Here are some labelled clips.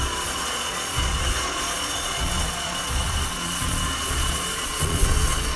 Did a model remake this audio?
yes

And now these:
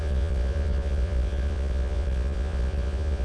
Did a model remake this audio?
yes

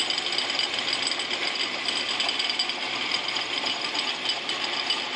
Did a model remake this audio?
no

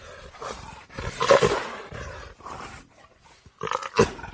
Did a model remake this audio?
no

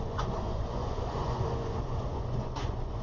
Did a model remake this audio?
yes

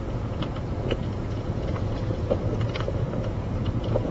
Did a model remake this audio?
yes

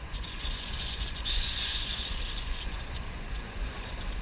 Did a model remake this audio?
yes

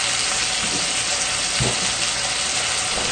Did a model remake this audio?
no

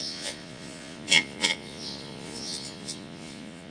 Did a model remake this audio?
yes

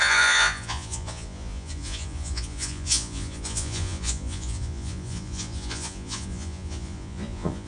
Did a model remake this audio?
yes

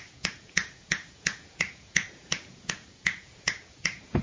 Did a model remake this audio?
yes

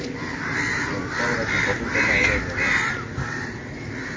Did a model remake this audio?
no